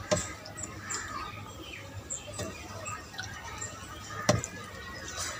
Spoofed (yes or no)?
no